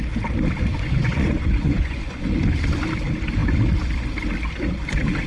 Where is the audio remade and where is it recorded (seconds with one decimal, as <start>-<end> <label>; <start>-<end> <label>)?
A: 0.0-0.7 recorded; 0.7-2.3 remade; 2.3-5.3 recorded

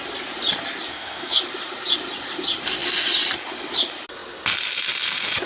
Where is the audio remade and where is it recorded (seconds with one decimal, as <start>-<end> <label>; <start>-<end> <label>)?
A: 0.0-0.9 recorded; 0.9-1.4 remade; 1.4-5.5 recorded